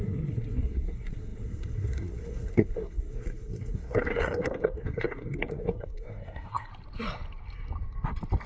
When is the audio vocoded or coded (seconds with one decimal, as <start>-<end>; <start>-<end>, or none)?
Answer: 0.0-6.7